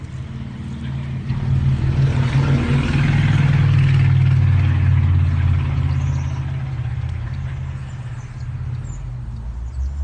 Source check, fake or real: real